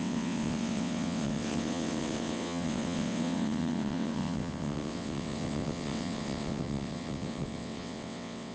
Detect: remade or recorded remade